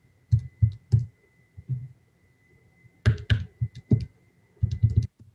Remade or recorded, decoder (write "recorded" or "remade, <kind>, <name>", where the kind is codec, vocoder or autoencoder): recorded